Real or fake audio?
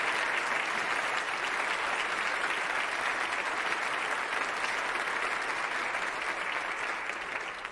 real